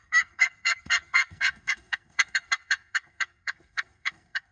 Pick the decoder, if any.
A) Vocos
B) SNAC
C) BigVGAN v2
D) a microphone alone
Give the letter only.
B